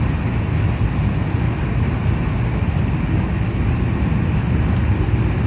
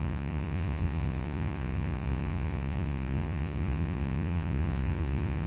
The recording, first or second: first